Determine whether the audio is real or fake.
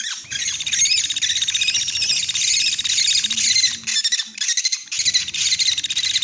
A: real